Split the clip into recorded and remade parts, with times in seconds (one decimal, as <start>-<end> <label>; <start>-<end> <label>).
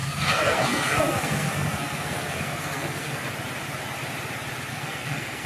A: 0.0-3.3 remade; 3.3-4.7 recorded; 4.7-5.5 remade